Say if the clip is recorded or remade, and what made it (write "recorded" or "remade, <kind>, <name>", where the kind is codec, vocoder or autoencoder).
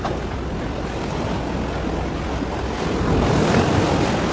recorded